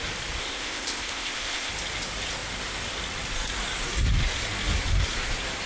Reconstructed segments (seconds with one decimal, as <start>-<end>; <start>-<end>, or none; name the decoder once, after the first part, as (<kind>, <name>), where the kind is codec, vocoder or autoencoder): 0.4-1.7 (codec, ZipCodec)